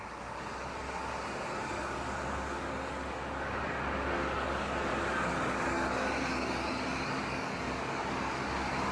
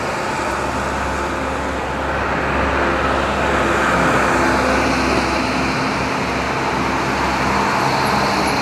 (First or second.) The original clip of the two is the second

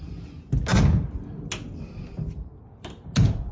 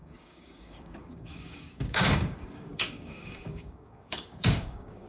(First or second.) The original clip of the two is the first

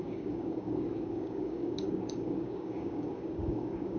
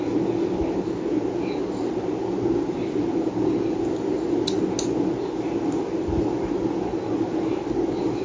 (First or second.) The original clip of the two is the second